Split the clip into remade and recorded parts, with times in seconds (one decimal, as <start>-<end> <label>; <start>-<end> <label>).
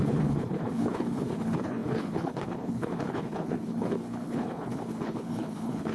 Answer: 0.0-5.9 remade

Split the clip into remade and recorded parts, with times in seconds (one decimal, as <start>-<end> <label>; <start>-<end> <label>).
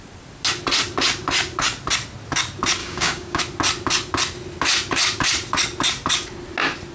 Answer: 0.0-2.8 recorded; 2.8-3.4 remade; 3.4-6.9 recorded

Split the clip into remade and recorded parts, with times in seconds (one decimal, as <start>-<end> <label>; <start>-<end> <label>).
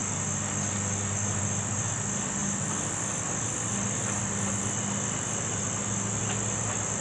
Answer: 0.0-7.0 recorded